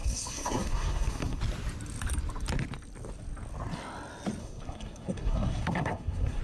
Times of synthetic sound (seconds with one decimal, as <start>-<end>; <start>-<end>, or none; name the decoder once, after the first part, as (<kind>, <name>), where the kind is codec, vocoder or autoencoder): 0.0-1.4 (codec, SNAC); 4.4-6.4